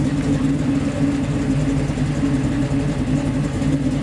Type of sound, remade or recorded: recorded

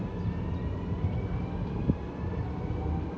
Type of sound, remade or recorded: recorded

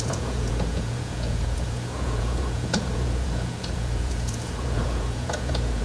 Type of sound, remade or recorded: remade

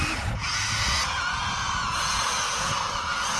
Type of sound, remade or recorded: remade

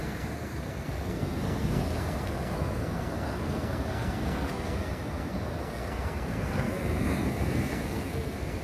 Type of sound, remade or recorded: remade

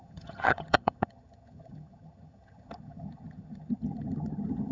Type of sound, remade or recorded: remade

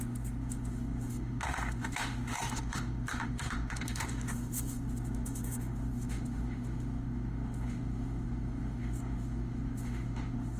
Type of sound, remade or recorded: remade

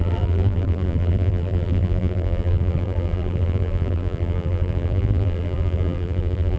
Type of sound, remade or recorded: remade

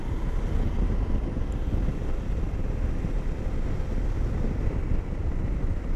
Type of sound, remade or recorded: recorded